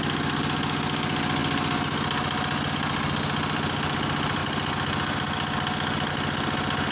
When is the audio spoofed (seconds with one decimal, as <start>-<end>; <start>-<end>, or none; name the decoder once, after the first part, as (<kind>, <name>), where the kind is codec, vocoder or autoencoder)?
none